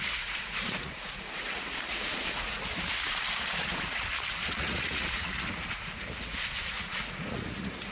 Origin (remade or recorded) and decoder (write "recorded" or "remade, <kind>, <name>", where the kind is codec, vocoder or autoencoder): remade, vocoder, Vocos